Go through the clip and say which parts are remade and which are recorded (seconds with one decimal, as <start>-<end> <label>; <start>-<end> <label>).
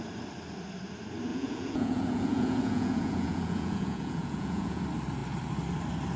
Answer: 0.0-1.3 recorded; 1.3-4.8 remade; 4.8-6.2 recorded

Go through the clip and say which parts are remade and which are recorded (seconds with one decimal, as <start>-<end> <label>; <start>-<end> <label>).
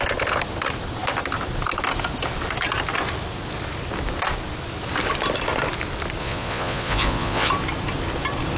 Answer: 0.0-6.2 recorded; 6.2-7.5 remade; 7.5-8.6 recorded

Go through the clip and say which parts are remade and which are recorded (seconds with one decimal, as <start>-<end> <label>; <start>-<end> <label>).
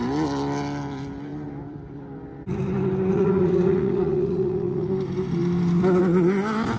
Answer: 0.0-3.1 recorded; 3.1-4.9 remade; 4.9-6.8 recorded